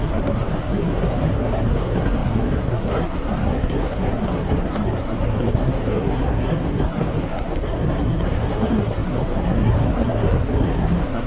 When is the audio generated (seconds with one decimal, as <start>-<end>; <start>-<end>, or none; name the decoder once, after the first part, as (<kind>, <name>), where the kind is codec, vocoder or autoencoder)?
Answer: 0.0-11.3 (codec, SNAC)